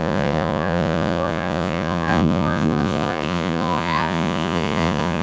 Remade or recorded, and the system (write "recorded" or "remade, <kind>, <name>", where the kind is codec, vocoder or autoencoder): remade, vocoder, Vocos